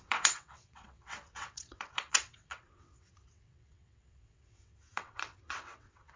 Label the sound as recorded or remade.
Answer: remade